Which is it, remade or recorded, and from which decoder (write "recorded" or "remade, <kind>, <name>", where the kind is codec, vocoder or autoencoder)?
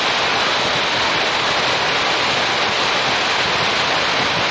recorded